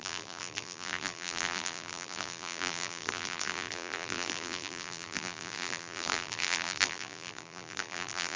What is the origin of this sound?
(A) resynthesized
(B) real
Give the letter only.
A